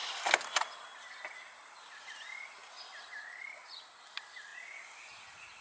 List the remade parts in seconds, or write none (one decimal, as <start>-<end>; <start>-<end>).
none